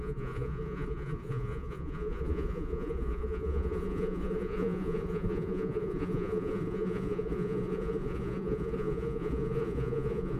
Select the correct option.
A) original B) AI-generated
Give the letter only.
B